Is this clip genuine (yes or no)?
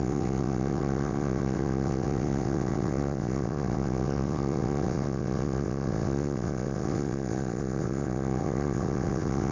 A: no